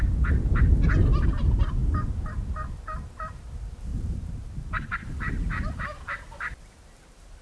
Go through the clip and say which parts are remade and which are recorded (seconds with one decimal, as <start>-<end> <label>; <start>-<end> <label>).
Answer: 0.0-1.8 recorded; 1.8-2.3 remade; 2.3-3.9 recorded; 3.9-6.6 remade; 6.6-7.4 recorded